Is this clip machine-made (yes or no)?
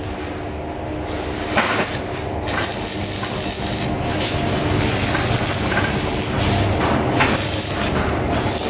no